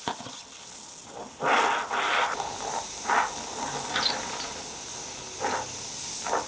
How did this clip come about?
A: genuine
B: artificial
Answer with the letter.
A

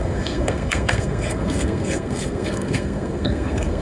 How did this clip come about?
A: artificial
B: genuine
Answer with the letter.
A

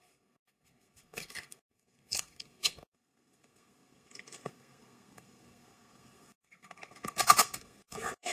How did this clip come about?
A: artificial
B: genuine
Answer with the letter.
A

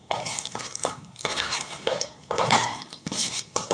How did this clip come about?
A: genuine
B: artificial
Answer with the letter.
B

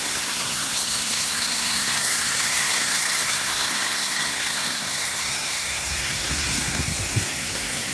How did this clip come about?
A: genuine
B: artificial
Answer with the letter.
B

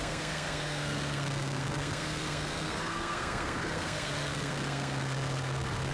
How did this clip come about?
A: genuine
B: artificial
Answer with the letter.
B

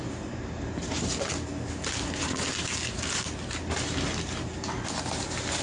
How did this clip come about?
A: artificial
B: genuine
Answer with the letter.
B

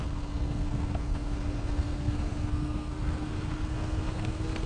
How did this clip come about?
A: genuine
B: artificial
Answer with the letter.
B